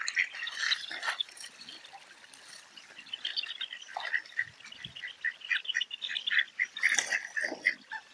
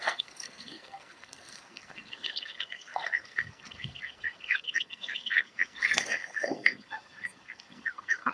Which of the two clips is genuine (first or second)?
first